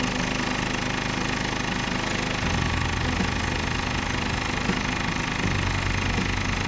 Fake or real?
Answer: real